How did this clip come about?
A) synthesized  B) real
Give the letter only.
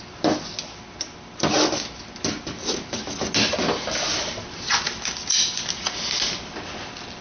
B